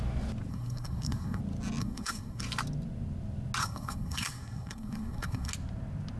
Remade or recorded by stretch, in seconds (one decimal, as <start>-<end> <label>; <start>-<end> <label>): 0.0-0.5 recorded; 0.5-1.4 remade; 1.4-1.8 recorded; 1.8-2.4 remade; 2.4-3.6 recorded; 3.6-5.5 remade; 5.5-6.2 recorded